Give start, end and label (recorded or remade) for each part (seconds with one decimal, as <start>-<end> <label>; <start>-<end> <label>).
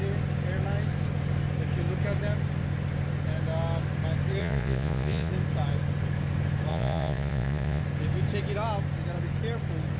0.0-4.4 recorded; 4.4-5.3 remade; 5.3-6.7 recorded; 6.7-7.8 remade; 7.8-10.0 recorded